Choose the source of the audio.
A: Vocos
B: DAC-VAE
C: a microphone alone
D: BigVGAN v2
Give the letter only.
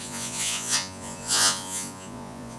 A